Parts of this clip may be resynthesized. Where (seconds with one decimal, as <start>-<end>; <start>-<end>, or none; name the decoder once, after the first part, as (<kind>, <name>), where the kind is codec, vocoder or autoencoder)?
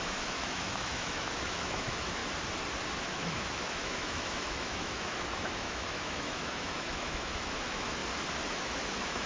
0.0-2.2 (autoencoder, DAC-VAE); 3.0-8.0; 8.5-9.3